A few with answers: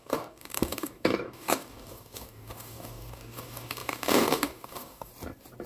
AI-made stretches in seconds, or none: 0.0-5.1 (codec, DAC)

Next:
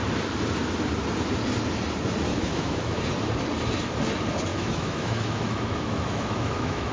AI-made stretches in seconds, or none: 2.3-3.0 (autoencoder, DAC-VAE); 4.5-6.9

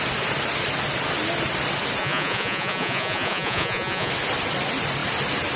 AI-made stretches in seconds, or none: 2.0-4.1 (vocoder, Vocos)

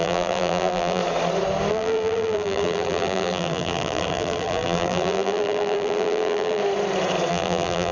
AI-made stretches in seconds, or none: 0.0-1.0 (vocoder, BigVGAN v2); 1.7-6.6; 7.3-7.9

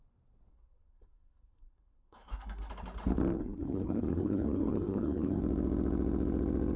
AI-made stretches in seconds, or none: 0.5-2.7 (codec, SNAC); 3.4-5.4

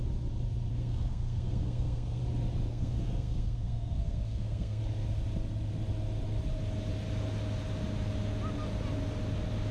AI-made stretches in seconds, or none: 0.7-2.2 (codec, SNAC); 2.7-4.8

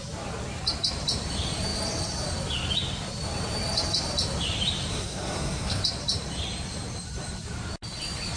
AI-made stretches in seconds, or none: 4.9-5.8 (codec, SNAC)